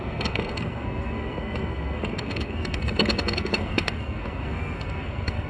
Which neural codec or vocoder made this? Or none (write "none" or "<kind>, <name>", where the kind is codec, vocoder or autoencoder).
codec, SNAC